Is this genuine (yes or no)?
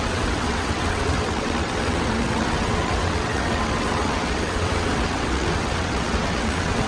no